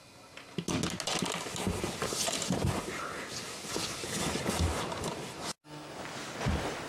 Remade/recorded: recorded